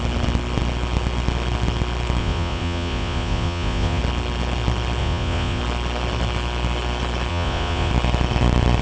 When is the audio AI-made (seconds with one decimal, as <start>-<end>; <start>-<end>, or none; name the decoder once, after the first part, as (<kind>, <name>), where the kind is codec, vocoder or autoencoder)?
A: 2.2-4.0 (vocoder, Vocos); 5.0-5.6; 7.3-7.9